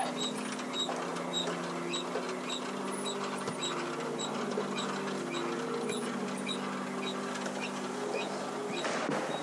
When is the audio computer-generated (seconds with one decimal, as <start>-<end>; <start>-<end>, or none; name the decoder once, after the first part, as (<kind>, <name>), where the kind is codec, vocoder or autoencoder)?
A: none